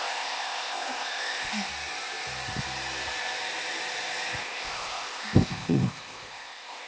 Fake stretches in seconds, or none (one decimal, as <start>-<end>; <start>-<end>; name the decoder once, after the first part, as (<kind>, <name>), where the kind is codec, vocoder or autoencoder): 0.0-1.7 (codec, ZipCodec); 4.4-6.9